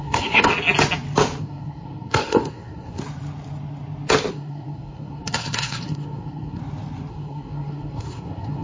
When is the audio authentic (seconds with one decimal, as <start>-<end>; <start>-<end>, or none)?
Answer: 0.5-1.4; 3.0-4.3; 6.6-7.1